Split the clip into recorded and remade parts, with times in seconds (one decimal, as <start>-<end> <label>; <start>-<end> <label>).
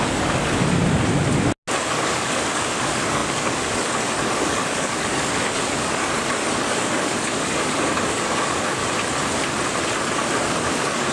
0.0-0.8 remade; 0.8-1.8 recorded; 1.8-8.8 remade; 8.8-10.0 recorded; 10.0-11.1 remade